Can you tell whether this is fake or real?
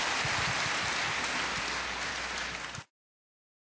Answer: real